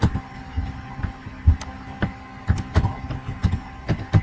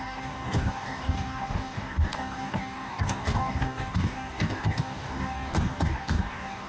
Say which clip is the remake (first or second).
second